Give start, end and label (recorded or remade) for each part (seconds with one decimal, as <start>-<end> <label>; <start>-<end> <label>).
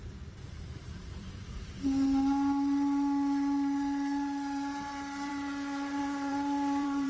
0.0-6.0 recorded; 6.0-7.1 remade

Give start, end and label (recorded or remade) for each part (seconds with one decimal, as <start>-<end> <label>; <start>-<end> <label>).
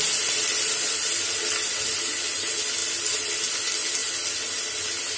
0.0-5.2 recorded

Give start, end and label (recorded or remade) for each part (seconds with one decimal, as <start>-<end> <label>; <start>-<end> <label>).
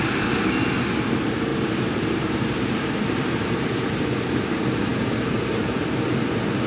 0.0-1.5 recorded; 1.5-4.0 remade; 4.0-6.7 recorded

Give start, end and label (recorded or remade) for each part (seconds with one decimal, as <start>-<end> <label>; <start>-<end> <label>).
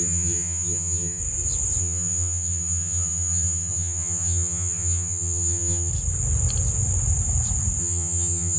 0.0-1.2 remade; 1.2-1.8 recorded; 1.8-5.9 remade; 5.9-7.8 recorded; 7.8-8.6 remade